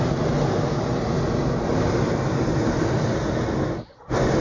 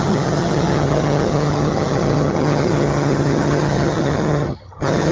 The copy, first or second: second